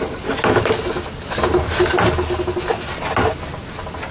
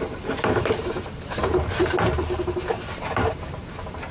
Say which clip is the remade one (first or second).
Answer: second